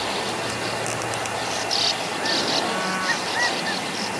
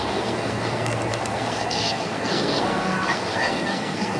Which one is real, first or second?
first